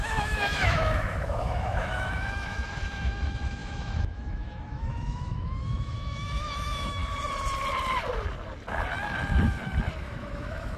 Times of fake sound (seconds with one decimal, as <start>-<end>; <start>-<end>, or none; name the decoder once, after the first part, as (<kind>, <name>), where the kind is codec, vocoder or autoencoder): 0.0-7.0 (autoencoder, DAC-VAE); 10.0-10.8